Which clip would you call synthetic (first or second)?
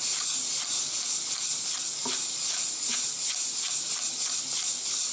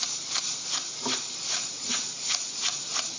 second